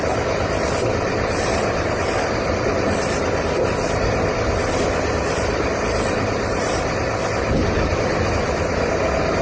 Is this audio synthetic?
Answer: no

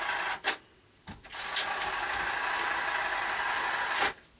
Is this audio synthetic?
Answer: no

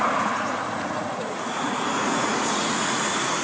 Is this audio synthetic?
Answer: yes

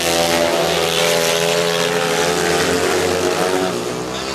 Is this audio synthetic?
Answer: no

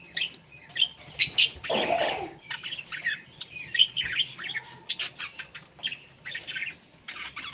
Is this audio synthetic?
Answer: no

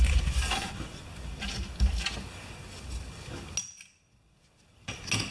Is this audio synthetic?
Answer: no